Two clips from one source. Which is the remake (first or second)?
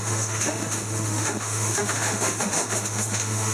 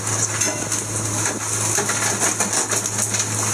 first